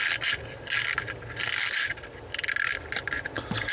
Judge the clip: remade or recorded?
recorded